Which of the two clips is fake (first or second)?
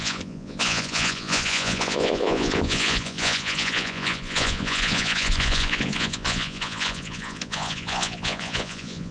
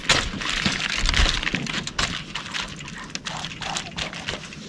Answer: first